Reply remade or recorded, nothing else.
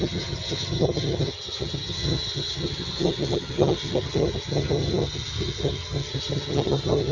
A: remade